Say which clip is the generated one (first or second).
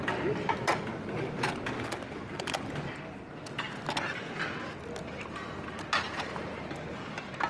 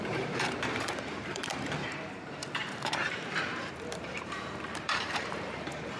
second